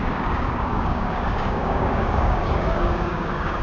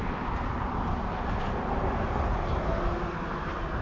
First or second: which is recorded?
second